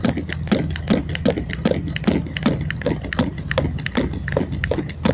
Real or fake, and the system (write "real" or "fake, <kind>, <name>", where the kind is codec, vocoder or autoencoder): real